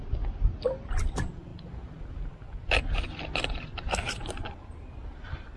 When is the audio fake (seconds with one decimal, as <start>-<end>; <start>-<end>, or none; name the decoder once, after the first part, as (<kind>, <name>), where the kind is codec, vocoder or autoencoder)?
none